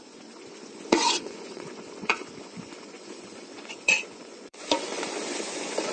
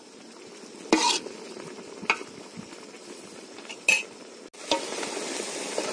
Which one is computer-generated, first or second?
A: first